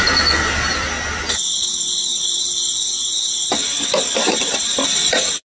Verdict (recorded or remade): recorded